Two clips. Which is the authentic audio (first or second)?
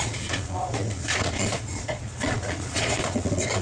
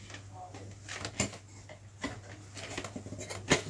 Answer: second